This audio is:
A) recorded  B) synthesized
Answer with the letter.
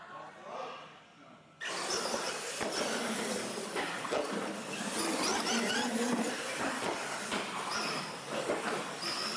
A